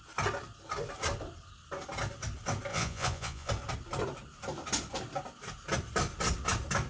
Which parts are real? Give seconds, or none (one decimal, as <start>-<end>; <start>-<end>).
0.0-2.7; 3.5-6.9